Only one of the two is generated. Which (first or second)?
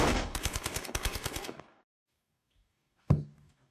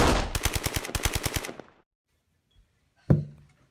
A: first